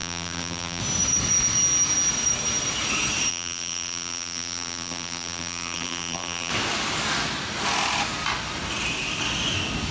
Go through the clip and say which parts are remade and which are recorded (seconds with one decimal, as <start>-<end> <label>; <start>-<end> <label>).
0.0-0.8 remade; 0.8-3.3 recorded; 3.3-6.5 remade; 6.5-9.9 recorded